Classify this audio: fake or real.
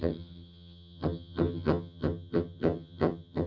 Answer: fake